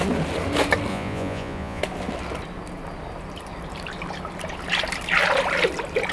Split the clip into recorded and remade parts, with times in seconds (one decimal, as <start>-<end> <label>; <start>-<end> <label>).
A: 0.0-0.9 recorded; 0.9-1.8 remade; 1.8-6.1 recorded